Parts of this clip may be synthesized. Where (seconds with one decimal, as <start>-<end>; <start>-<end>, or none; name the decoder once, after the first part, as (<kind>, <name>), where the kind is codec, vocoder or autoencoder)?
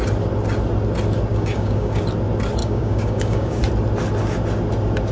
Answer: 1.3-2.0 (codec, DAC); 2.6-3.6